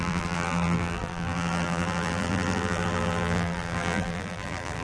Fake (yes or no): yes